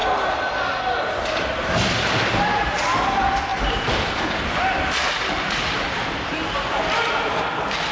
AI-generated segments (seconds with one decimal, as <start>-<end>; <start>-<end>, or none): 3.5-7.4